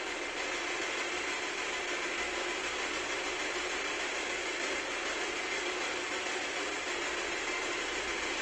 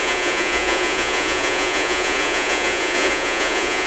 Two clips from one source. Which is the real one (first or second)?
first